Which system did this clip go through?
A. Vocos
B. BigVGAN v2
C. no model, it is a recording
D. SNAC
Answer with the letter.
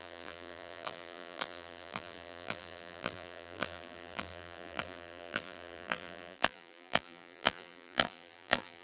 B